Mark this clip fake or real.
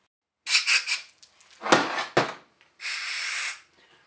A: real